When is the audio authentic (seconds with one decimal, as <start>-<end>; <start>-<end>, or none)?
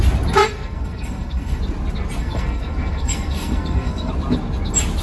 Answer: 0.0-0.4; 1.6-2.2; 4.1-5.0